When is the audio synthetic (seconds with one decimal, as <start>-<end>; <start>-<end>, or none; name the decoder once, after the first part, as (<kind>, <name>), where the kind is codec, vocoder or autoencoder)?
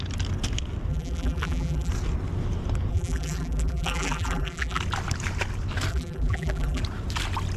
0.9-1.9 (vocoder, BigVGAN v2); 2.9-4.8; 5.9-6.8